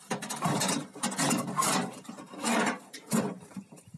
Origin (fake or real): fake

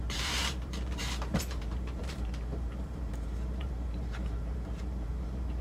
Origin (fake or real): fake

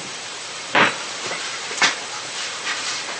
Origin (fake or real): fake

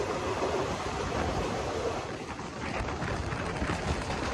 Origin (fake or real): real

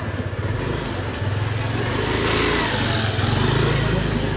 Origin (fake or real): real